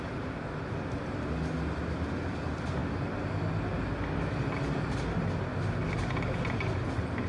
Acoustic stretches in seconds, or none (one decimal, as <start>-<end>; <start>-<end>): 0.0-7.3